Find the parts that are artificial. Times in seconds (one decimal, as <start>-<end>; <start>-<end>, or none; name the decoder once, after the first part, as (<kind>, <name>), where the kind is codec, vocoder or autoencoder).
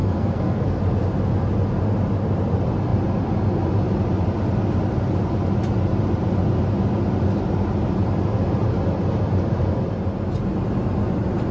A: 0.0-0.8 (codec, SNAC)